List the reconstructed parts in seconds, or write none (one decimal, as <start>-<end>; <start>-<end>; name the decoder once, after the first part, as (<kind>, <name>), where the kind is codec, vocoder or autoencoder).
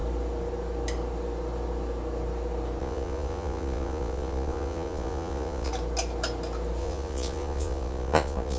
2.8-5.7 (vocoder, Vocos); 6.8-8.6